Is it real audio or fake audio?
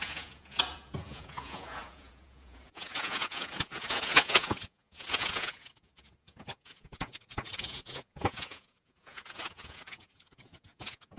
fake